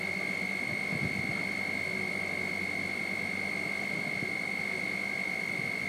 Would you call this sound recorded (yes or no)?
yes